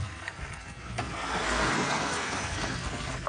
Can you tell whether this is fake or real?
fake